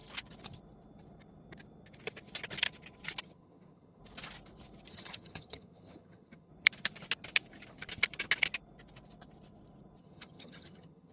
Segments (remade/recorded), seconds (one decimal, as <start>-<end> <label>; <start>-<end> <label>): 0.0-3.2 recorded; 3.2-4.0 remade; 4.0-4.9 recorded; 4.9-6.5 remade; 6.5-10.0 recorded; 10.0-11.1 remade